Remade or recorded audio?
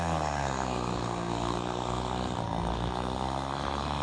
remade